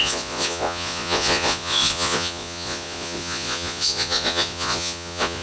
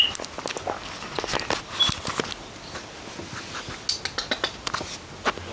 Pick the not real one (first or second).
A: first